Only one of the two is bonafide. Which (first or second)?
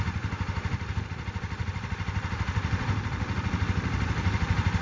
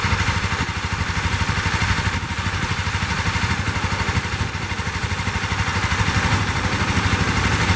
second